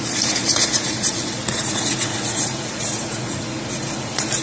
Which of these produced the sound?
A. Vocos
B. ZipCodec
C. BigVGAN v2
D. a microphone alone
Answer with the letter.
A